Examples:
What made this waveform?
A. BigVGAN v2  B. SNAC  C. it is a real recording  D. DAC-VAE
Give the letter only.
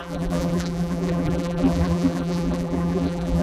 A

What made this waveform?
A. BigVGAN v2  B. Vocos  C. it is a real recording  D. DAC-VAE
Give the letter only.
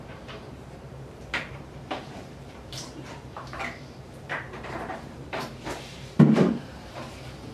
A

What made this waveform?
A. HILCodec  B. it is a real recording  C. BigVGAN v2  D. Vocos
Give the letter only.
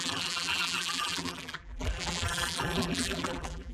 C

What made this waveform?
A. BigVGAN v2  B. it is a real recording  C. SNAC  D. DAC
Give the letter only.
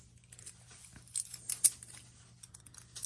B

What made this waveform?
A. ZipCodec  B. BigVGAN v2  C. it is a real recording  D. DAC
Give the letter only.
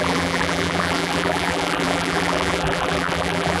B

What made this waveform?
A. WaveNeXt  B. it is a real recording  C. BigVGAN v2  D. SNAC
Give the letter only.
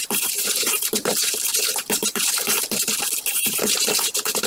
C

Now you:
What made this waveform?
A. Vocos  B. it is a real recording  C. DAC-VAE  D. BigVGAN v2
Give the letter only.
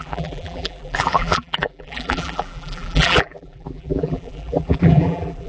D